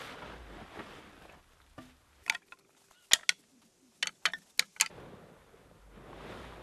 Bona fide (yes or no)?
yes